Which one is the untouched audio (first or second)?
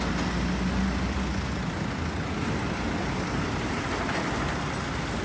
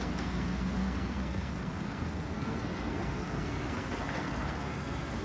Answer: first